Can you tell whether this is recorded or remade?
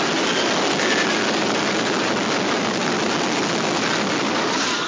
recorded